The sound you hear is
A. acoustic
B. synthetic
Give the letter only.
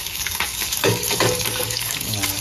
B